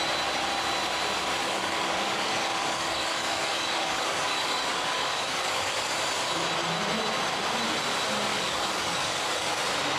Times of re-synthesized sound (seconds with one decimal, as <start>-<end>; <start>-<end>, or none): 1.4-5.9; 8.3-9.6